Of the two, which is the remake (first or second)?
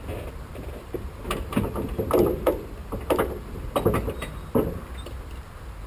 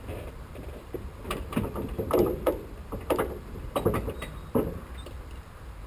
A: second